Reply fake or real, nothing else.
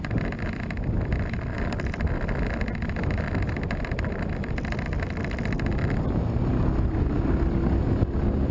real